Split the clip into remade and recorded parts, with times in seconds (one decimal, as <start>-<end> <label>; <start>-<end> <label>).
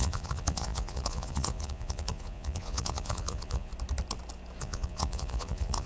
0.0-3.7 remade; 3.7-4.6 recorded; 4.6-5.9 remade